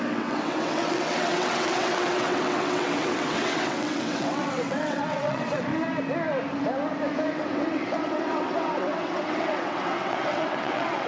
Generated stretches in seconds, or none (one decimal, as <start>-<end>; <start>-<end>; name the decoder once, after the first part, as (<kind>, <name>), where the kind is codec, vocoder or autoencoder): 0.0-5.7 (vocoder, WaveNeXt); 7.3-11.1